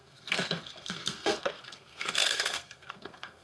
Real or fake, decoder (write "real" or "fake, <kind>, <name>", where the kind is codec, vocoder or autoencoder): fake, codec, SNAC